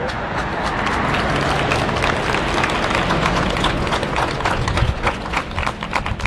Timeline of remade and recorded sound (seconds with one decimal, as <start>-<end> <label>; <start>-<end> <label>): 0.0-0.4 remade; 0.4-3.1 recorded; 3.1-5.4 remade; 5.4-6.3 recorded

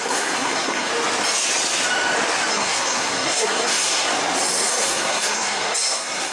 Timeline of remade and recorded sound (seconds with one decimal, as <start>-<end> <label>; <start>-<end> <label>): 0.0-0.9 remade; 0.9-2.5 recorded; 2.5-4.1 remade; 4.1-4.7 recorded; 4.7-6.3 remade

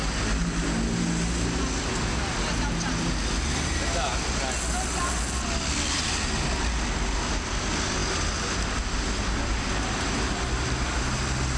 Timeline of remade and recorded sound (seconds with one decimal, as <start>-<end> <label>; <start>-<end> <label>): 0.0-11.6 recorded